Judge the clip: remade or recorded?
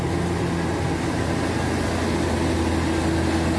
recorded